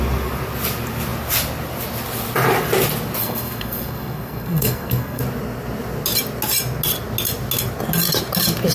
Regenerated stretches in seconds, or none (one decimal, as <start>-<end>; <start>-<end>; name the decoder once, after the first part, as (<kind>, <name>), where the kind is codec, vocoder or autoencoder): 3.2-5.2 (codec, SNAC)

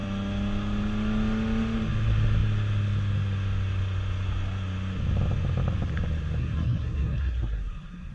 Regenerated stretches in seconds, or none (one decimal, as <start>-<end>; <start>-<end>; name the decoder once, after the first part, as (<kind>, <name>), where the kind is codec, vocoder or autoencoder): 6.4-8.1 (codec, SNAC)

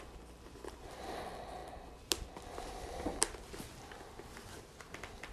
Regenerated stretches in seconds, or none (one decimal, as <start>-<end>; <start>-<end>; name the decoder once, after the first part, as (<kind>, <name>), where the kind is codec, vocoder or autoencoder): none

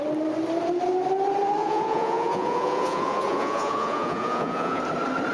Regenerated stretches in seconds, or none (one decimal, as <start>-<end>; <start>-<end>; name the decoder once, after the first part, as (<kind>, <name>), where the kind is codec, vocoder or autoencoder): 1.6-4.8 (vocoder, Vocos)

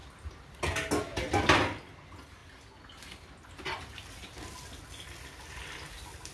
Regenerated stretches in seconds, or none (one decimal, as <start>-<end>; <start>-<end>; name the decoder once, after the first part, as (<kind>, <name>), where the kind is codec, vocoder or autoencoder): none

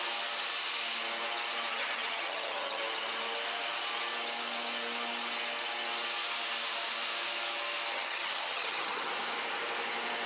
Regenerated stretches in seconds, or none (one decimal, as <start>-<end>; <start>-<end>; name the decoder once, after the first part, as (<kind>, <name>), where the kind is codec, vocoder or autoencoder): 1.7-2.8 (vocoder, HiFi-GAN); 7.9-9.1

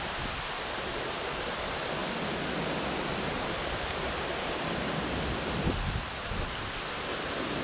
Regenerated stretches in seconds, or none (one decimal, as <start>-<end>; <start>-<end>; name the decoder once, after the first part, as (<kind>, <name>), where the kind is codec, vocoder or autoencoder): none